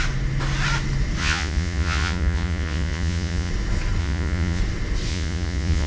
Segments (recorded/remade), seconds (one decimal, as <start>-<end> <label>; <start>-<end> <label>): 0.0-1.2 recorded; 1.2-3.5 remade; 3.5-4.0 recorded; 4.0-4.6 remade; 4.6-5.1 recorded; 5.1-5.9 remade